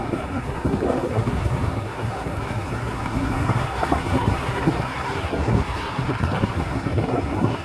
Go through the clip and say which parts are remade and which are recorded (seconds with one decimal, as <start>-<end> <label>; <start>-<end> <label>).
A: 0.0-7.6 remade